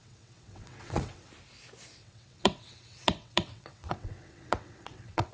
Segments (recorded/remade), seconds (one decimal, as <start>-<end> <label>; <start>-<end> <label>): 0.0-1.3 remade; 1.3-2.0 recorded; 2.0-5.3 remade